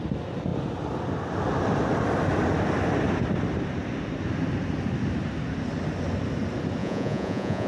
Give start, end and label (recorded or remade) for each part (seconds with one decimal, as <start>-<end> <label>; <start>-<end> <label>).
0.0-6.8 recorded; 6.8-7.7 remade